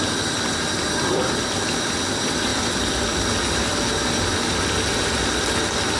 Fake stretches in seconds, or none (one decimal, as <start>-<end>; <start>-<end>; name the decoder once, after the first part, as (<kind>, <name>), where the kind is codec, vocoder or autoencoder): none